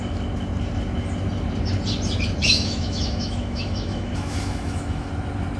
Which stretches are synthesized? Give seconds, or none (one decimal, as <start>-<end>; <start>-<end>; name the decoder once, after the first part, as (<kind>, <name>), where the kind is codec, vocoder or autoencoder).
2.4-5.1 (autoencoder, DAC-VAE)